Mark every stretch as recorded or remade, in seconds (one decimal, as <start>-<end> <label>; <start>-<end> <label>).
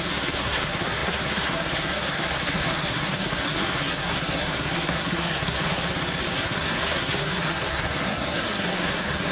0.0-5.8 remade; 5.8-6.3 recorded; 6.3-9.3 remade